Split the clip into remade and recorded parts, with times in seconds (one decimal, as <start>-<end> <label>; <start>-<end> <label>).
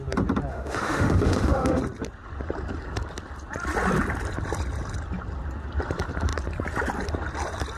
0.0-0.5 recorded; 0.5-1.8 remade; 1.8-7.8 recorded